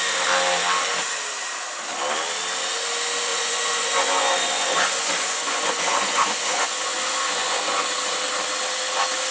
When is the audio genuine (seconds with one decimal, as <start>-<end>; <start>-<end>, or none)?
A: 0.0-3.3; 7.6-9.3